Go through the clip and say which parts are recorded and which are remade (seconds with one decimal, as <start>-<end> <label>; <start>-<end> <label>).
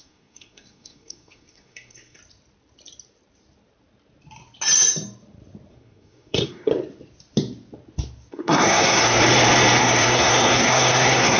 0.0-2.2 remade; 2.2-5.7 recorded; 5.7-6.7 remade; 6.7-8.3 recorded; 8.3-9.2 remade; 9.2-9.8 recorded; 9.8-11.4 remade